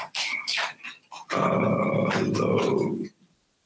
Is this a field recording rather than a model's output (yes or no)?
yes